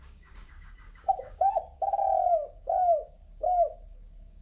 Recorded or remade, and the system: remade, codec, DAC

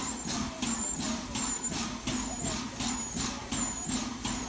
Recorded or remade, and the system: recorded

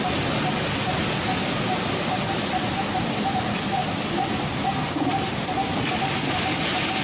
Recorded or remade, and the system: recorded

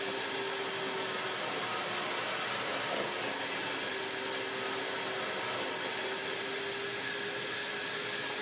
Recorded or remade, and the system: recorded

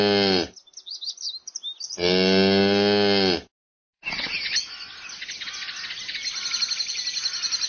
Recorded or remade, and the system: recorded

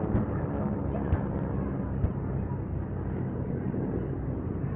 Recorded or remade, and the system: recorded